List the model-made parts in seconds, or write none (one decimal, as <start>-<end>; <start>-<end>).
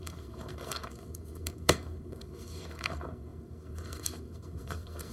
0.0-5.1